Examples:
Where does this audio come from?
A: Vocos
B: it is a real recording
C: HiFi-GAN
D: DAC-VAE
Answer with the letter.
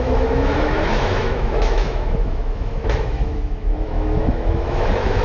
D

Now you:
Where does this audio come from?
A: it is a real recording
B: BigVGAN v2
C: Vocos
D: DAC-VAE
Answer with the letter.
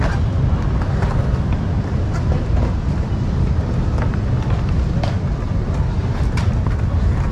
A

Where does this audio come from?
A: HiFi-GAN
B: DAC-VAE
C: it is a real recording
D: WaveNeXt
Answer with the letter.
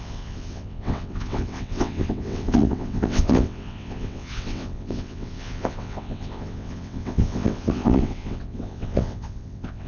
D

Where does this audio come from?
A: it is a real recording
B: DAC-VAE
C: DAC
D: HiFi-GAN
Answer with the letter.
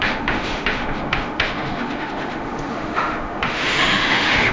B